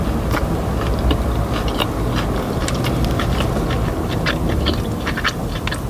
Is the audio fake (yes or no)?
no